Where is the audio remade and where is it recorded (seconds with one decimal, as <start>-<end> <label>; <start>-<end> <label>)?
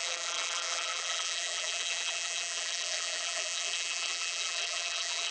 0.0-5.3 remade